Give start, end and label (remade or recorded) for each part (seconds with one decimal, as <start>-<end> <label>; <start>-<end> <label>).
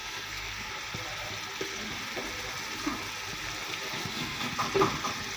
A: 0.0-0.7 remade; 0.7-4.0 recorded; 4.0-4.5 remade; 4.5-5.4 recorded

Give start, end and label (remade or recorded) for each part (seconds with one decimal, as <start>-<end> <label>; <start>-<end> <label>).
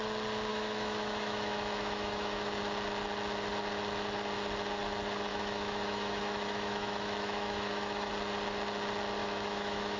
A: 0.0-0.5 recorded; 0.5-2.6 remade; 2.6-5.3 recorded; 5.3-8.1 remade; 8.1-9.2 recorded; 9.2-10.0 remade